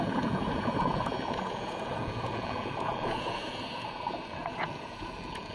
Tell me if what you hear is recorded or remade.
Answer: remade